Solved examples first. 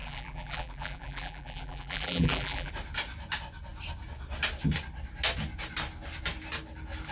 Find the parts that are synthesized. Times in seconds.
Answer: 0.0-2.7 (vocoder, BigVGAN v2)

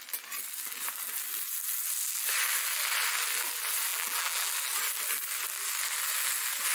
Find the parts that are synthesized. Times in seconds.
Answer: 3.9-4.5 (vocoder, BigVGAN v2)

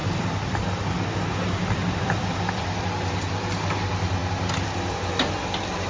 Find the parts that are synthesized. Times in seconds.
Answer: 0.0-0.6 (vocoder, BigVGAN v2); 1.8-2.6

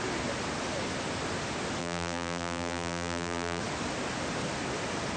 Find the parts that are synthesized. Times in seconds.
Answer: 1.8-3.6 (vocoder, BigVGAN v2)